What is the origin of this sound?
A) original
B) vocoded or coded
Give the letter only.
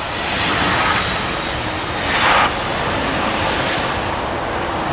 A